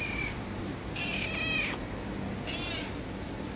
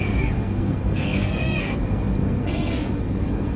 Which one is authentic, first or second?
first